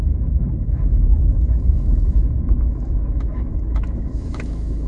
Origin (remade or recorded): remade